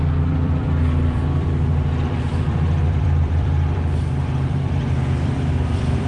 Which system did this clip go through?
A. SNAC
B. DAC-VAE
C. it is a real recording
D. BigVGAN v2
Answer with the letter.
D